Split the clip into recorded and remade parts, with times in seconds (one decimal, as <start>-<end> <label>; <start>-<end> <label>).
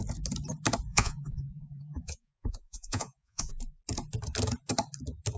0.0-0.9 recorded; 0.9-3.5 remade; 3.5-5.4 recorded